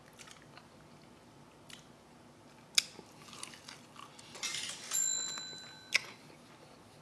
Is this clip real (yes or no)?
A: yes